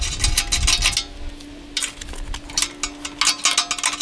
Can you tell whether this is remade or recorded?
recorded